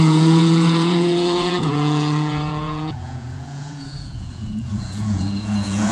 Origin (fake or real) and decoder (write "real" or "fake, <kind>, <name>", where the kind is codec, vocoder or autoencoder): fake, vocoder, Vocos